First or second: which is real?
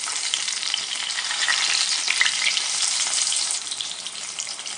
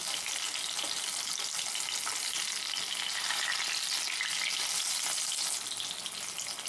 second